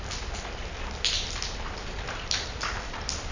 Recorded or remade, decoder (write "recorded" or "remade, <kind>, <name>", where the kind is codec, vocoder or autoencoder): recorded